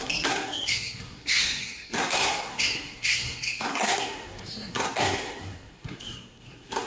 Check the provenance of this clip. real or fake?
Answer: fake